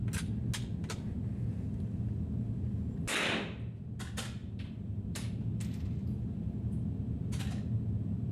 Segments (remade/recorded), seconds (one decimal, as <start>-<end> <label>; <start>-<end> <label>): 0.0-4.4 recorded; 4.4-6.7 remade; 6.7-8.3 recorded